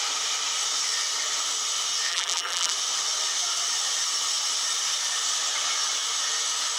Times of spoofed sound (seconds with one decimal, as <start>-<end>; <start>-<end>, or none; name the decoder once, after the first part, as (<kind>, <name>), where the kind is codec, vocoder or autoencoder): 2.1-2.7 (vocoder, BigVGAN v2)